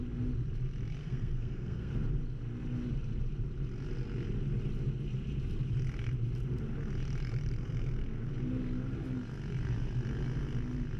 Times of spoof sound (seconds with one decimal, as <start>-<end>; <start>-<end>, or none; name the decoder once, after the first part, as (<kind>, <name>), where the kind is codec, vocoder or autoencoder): 1.0-1.9 (codec, SNAC)